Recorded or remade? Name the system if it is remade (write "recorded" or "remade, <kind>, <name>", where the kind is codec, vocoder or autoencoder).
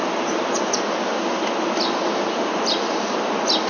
recorded